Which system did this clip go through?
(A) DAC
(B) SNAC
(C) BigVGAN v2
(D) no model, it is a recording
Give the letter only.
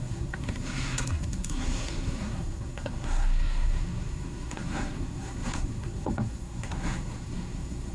B